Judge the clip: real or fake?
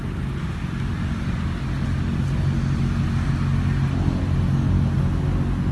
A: real